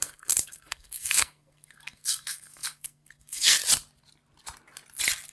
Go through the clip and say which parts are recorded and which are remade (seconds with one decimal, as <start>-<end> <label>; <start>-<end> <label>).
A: 0.0-3.6 remade; 3.6-5.3 recorded